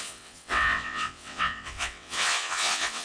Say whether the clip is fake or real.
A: fake